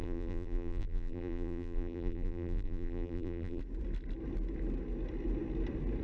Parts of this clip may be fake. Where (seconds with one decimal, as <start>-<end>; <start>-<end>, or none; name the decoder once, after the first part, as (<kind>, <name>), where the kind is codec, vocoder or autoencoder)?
0.0-3.6 (vocoder, BigVGAN v2)